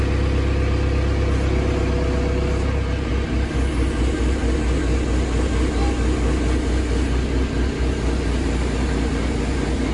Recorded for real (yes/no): yes